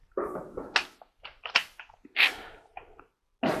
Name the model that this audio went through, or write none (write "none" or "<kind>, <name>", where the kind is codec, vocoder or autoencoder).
none